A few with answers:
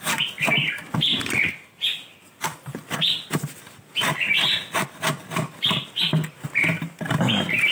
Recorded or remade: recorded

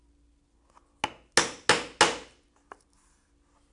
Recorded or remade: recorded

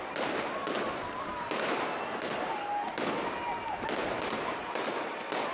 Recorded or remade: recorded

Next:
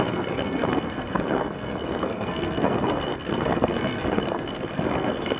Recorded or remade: remade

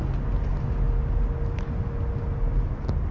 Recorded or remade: recorded